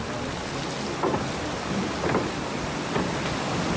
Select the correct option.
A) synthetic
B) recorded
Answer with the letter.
B